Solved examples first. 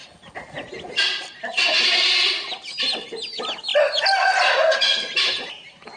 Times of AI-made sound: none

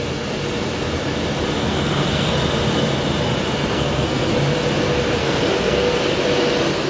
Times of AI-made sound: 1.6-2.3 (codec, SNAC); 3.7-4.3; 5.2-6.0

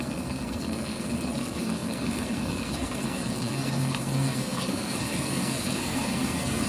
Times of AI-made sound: 0.0-6.7 (codec, SNAC)